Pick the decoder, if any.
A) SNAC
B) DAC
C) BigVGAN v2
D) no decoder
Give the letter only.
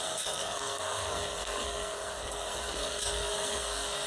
A